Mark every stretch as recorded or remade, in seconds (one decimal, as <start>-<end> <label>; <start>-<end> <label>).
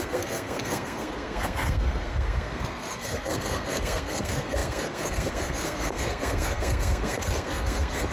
0.0-8.1 remade